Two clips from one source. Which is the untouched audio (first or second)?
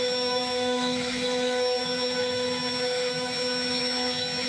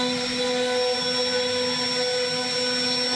second